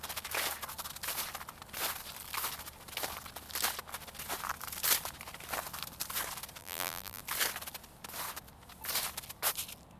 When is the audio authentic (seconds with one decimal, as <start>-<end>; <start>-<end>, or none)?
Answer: 0.0-6.6; 7.2-10.0